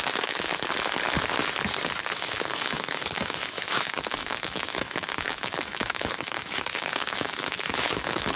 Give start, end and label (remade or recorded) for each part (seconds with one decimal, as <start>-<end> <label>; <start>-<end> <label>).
0.0-0.5 remade; 0.5-2.1 recorded; 2.1-8.4 remade